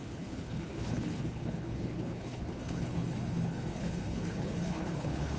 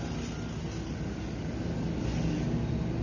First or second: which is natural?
second